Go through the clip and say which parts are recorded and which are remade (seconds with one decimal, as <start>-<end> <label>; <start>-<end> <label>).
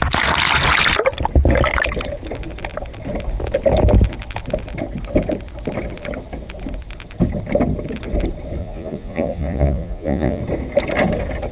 0.0-8.6 recorded; 8.6-10.4 remade; 10.4-11.5 recorded